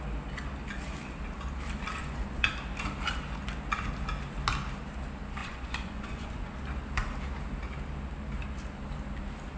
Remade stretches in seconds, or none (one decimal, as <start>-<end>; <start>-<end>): 2.0-2.5; 5.4-6.5